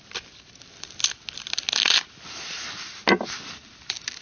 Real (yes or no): yes